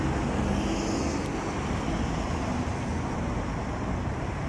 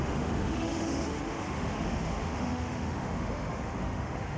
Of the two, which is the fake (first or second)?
second